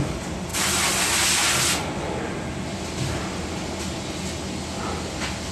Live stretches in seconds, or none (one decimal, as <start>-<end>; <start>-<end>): 0.0-5.5